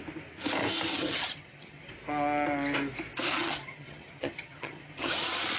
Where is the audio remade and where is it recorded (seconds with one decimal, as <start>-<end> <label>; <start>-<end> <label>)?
0.0-0.9 recorded; 0.9-1.9 remade; 1.9-3.3 recorded; 3.3-5.1 remade; 5.1-5.6 recorded